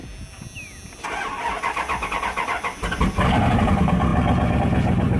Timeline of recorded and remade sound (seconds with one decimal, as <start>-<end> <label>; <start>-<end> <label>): 0.0-3.1 recorded; 3.1-5.2 remade